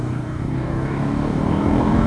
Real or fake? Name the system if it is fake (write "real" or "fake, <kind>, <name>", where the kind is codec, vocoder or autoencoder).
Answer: fake, codec, DAC